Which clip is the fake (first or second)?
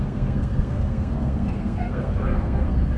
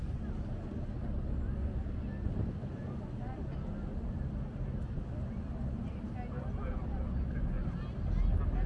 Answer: first